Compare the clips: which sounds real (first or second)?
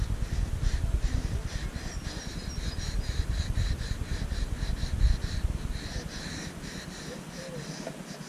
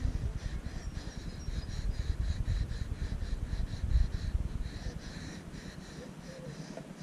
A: first